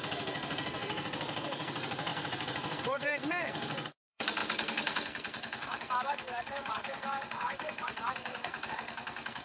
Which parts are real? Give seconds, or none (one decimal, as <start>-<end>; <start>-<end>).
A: none